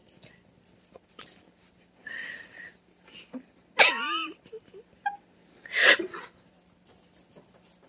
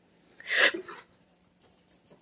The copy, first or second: second